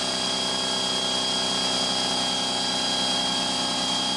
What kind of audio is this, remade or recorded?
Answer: recorded